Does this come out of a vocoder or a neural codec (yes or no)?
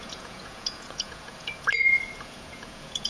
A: yes